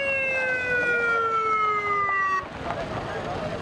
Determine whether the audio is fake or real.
real